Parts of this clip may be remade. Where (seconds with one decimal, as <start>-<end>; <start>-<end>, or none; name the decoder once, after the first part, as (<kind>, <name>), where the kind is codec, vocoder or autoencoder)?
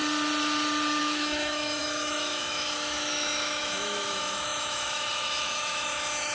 1.0-6.3 (autoencoder, DAC-VAE)